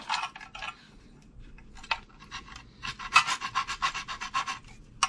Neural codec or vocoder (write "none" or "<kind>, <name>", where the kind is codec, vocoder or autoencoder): none